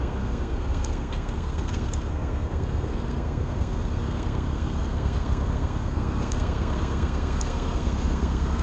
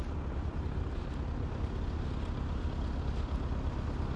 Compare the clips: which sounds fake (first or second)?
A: first